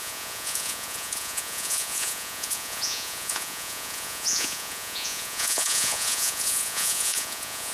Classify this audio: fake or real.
fake